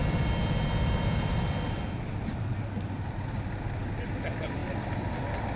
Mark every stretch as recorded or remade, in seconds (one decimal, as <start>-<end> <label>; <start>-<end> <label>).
0.0-5.6 recorded